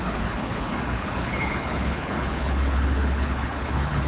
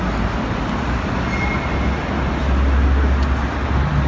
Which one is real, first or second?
second